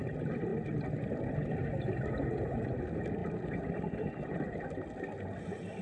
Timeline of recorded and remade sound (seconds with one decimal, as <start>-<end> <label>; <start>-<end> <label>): 0.0-5.8 recorded